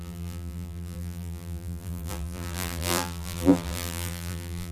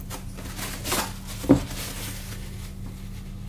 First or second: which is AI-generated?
first